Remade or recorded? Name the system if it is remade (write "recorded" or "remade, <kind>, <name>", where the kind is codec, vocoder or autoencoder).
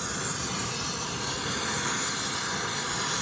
recorded